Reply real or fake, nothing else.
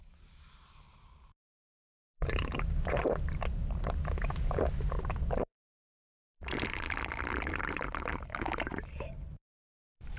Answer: fake